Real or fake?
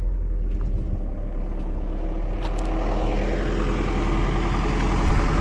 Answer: real